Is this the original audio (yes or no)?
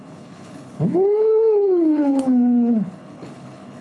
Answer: no